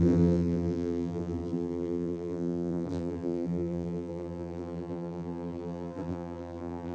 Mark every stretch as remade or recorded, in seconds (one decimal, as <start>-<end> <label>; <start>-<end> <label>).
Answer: 0.0-6.9 remade